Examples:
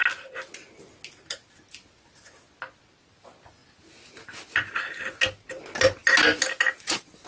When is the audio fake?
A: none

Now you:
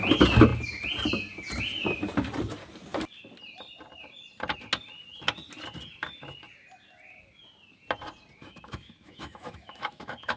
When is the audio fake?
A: 8.4-10.4

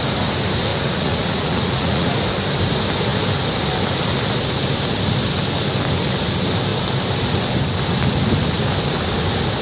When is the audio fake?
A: 0.7-2.1

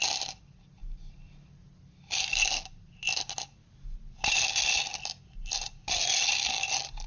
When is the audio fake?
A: none

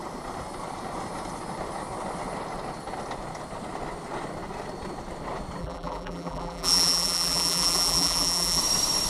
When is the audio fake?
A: 5.6-8.6

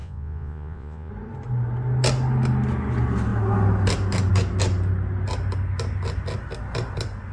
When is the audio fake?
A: 0.0-1.1

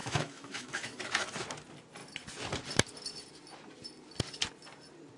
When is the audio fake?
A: 0.0-1.0

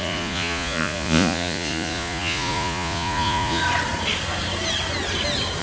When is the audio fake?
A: 0.0-3.6